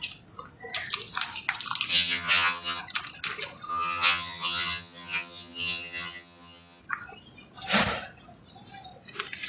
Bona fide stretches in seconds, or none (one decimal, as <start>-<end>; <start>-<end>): 0.0-1.9; 2.8-3.7; 6.8-9.5